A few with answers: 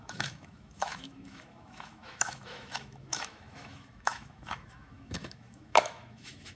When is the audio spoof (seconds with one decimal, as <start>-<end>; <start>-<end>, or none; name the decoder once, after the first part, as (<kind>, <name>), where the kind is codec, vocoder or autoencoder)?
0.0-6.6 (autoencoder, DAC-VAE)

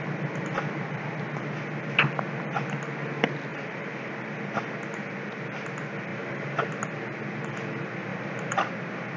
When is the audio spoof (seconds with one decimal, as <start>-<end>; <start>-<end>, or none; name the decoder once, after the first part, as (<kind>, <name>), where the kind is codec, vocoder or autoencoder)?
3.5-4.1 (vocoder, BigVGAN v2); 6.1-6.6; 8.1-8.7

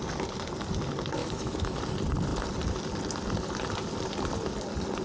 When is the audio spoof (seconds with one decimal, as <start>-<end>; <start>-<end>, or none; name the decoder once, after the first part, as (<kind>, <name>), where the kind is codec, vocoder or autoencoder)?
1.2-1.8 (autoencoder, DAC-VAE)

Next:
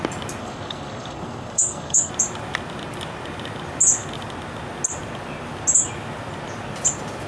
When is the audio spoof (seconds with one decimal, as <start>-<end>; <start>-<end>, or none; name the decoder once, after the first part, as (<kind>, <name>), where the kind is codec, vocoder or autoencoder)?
0.4-2.1 (codec, SNAC)

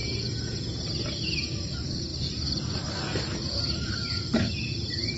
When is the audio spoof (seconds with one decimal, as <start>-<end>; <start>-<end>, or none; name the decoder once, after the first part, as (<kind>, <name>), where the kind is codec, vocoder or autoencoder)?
1.7-5.2 (vocoder, BigVGAN v2)